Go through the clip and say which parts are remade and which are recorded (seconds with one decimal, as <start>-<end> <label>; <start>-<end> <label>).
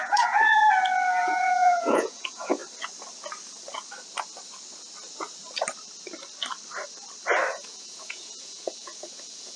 0.0-0.6 remade; 0.6-1.2 recorded; 1.2-2.6 remade; 2.6-7.5 recorded; 7.5-9.6 remade